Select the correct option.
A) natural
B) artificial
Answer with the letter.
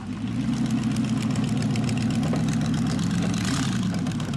A